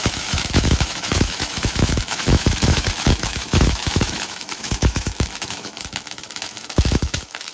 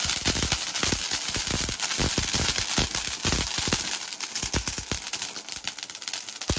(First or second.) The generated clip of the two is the first